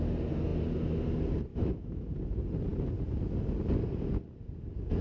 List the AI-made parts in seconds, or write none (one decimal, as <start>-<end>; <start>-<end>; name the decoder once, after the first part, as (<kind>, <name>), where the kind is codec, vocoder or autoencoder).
1.5-2.1 (autoencoder, DAC-VAE)